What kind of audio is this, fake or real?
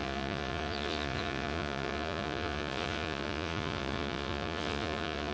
fake